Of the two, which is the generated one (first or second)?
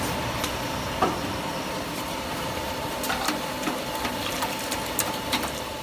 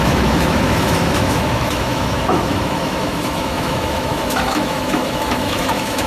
second